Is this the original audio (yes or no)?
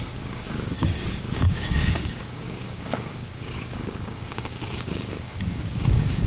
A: no